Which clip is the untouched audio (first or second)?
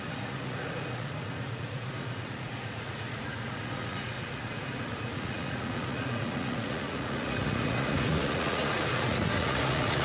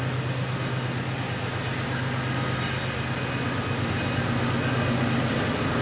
second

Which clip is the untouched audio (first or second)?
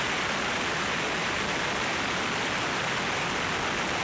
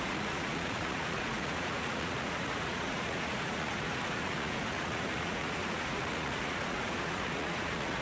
first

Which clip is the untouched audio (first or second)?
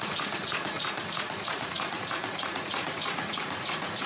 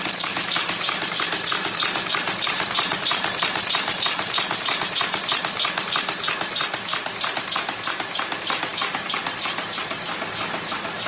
second